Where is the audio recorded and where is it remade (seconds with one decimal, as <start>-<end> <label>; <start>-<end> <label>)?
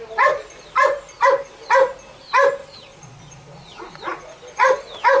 0.0-2.6 recorded; 2.6-4.8 remade; 4.8-5.2 recorded